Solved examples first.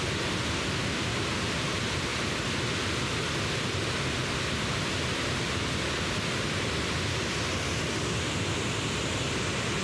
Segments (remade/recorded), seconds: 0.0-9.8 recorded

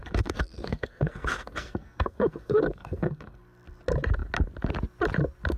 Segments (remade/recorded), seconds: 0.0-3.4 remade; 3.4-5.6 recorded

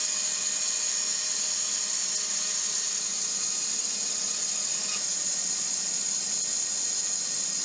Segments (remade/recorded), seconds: 0.0-5.1 recorded; 5.1-6.0 remade; 6.0-7.6 recorded